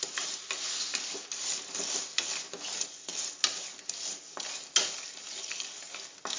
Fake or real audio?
real